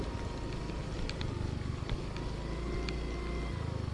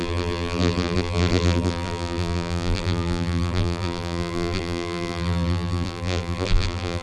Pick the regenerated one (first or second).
second